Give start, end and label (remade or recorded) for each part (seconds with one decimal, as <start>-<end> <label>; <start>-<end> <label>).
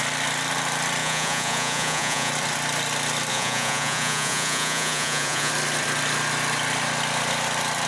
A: 0.0-1.0 recorded; 1.0-2.3 remade; 2.3-3.3 recorded; 3.3-5.5 remade; 5.5-7.9 recorded